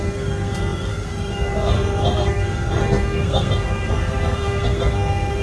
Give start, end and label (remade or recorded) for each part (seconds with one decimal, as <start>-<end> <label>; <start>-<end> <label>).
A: 0.0-5.4 remade